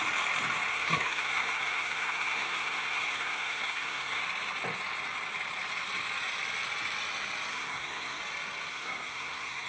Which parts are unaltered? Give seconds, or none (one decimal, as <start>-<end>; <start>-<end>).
0.0-0.7; 4.2-7.5; 8.2-8.7